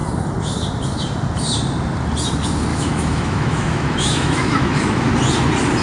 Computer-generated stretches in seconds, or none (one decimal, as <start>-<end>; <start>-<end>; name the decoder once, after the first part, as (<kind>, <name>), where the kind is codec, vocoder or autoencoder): 2.7-5.1 (autoencoder, DAC-VAE)